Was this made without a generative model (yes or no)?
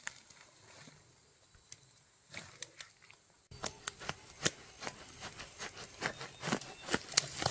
yes